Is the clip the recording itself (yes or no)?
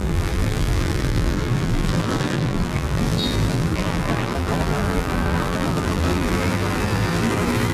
no